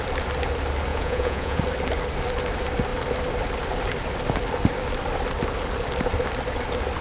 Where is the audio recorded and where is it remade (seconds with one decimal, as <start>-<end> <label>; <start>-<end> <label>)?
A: 0.0-0.9 recorded; 0.9-1.6 remade; 1.6-7.0 recorded